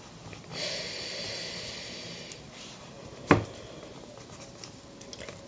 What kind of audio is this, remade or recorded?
recorded